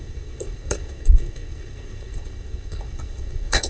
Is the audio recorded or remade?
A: remade